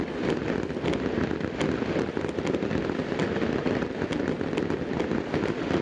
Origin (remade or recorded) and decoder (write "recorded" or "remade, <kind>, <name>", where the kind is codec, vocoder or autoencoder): recorded